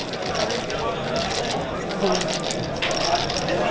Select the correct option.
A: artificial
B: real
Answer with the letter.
B